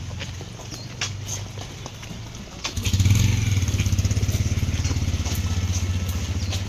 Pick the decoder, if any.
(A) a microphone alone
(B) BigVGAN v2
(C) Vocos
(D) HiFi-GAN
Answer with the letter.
A